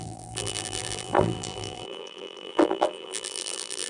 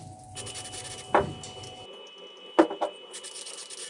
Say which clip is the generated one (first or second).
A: first